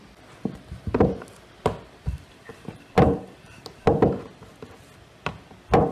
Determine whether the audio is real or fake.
real